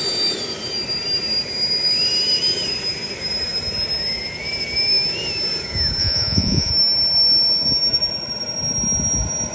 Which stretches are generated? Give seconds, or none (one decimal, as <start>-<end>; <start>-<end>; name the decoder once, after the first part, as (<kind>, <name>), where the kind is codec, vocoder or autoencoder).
6.0-6.7 (vocoder, Vocos)